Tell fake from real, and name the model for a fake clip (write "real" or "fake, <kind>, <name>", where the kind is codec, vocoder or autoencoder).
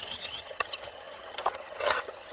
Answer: fake, vocoder, HiFi-GAN